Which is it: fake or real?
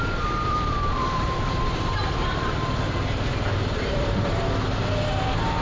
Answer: fake